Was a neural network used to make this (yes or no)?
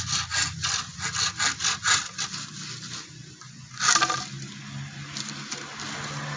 no